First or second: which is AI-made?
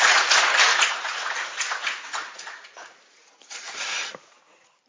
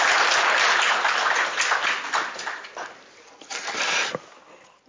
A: first